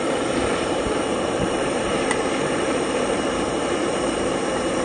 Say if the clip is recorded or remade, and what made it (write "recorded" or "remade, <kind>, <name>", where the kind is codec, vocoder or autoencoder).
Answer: remade, vocoder, BigVGAN v2